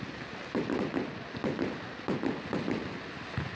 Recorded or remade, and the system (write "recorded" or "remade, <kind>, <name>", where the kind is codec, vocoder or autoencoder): recorded